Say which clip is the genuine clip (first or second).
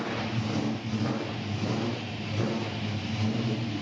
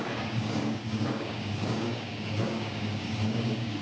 first